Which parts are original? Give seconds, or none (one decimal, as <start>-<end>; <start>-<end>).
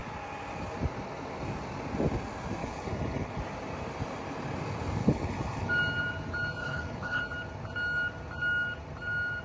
0.0-2.6; 3.4-5.0; 5.7-6.6; 7.2-9.4